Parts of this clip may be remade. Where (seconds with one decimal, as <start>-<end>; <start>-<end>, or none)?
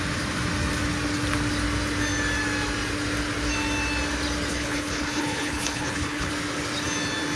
4.5-6.3